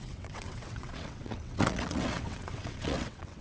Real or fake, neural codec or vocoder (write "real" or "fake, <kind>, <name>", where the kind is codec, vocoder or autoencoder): fake, vocoder, WaveNeXt